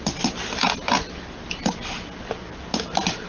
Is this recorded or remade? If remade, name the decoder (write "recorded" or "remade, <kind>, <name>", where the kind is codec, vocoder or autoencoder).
recorded